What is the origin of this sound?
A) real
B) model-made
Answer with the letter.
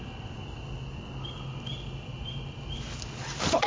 A